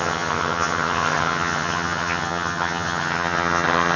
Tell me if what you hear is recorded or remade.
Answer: remade